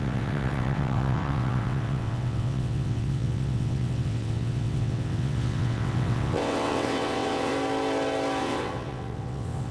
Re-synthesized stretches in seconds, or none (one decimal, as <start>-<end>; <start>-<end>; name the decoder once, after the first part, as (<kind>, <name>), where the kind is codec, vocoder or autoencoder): 0.0-7.5 (vocoder, WaveNeXt); 8.4-9.7